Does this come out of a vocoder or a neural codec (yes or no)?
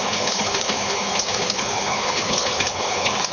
yes